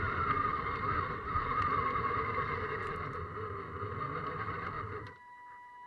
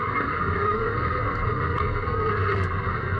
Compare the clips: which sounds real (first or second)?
first